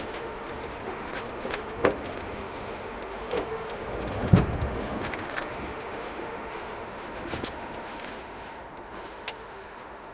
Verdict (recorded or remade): remade